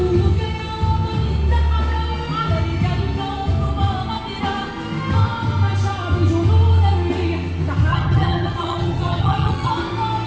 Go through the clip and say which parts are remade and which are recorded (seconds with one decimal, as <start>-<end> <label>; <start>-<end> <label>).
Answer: 0.0-7.9 recorded; 7.9-9.7 remade; 9.7-10.3 recorded